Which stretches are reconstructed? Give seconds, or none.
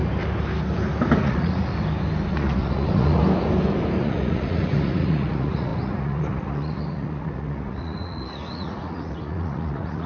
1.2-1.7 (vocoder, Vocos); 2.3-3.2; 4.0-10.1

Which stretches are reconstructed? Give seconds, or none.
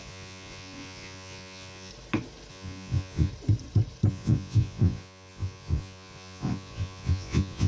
0.0-1.9 (vocoder, Vocos); 2.5-3.3; 4.1-7.7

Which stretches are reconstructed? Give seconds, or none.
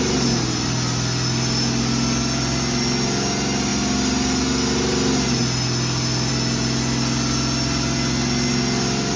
none